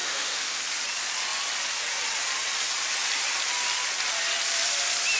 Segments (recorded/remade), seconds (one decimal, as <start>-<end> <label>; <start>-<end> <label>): 0.0-0.6 remade; 0.6-5.2 recorded